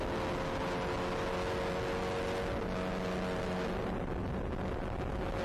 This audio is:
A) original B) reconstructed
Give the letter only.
A